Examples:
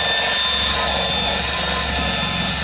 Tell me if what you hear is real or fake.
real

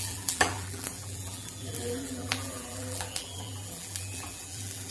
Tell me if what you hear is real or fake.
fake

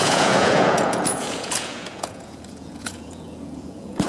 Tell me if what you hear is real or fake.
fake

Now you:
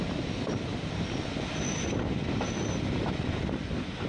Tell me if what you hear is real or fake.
real